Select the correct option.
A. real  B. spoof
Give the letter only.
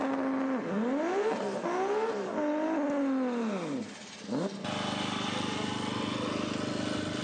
A